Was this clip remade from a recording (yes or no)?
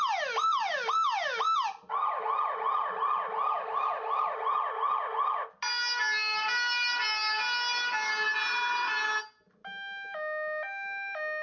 no